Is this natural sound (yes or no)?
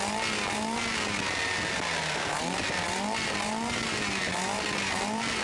yes